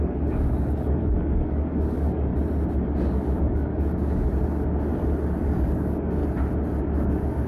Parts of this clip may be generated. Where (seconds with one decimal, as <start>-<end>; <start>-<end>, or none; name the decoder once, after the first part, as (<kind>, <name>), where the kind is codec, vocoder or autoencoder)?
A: 0.0-2.3 (codec, DAC); 3.0-4.3; 5.4-6.2; 6.8-7.5